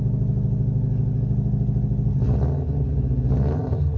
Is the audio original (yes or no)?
yes